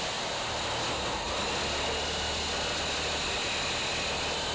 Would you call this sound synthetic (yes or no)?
no